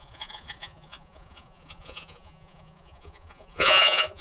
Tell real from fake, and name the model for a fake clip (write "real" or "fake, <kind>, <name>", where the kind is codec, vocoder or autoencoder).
fake, vocoder, Vocos